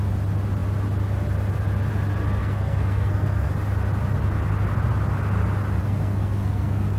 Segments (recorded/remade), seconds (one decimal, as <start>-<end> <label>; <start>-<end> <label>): 0.0-2.4 recorded; 2.4-3.5 remade; 3.5-5.8 recorded; 5.8-7.0 remade